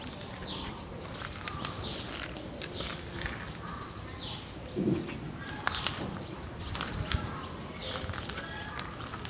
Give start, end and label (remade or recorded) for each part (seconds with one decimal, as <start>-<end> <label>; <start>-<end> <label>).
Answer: 0.0-9.3 recorded